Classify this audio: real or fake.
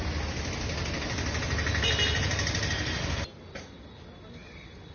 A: real